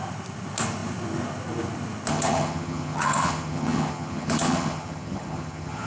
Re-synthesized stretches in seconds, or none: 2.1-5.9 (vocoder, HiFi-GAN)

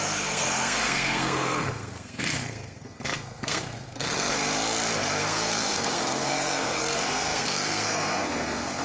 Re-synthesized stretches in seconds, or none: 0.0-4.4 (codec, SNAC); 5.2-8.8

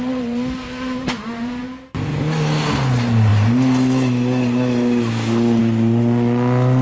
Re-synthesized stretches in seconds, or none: none

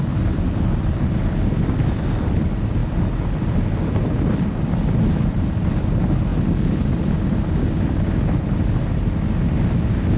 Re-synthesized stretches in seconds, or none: none